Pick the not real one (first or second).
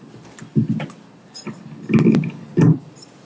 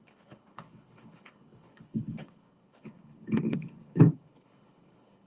second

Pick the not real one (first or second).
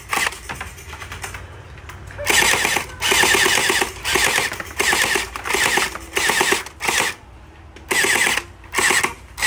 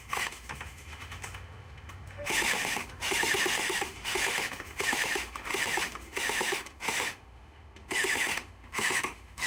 second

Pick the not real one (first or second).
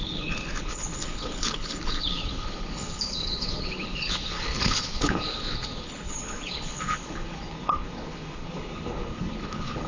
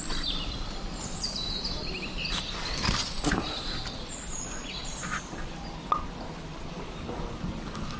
first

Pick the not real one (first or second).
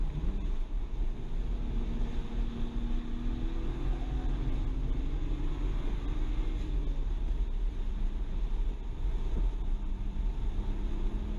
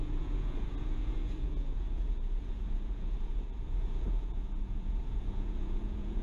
second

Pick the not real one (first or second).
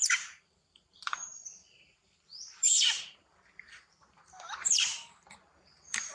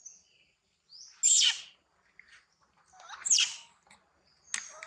first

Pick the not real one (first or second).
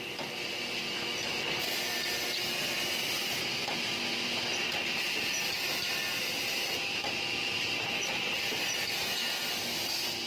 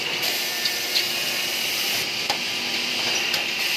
second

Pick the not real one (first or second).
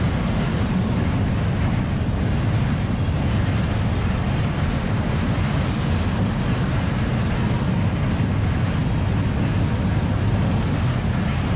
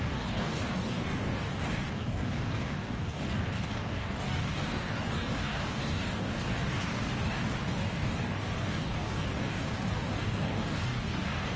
second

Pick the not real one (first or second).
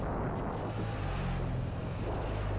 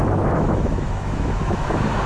second